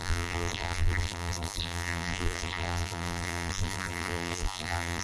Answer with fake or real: fake